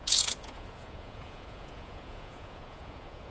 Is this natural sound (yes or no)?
no